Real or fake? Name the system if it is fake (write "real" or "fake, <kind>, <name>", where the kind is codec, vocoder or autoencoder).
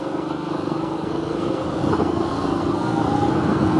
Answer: fake, codec, SNAC